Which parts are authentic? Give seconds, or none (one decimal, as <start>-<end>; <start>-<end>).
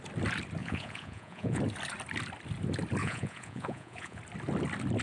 0.0-0.6; 1.6-3.0; 4.2-5.0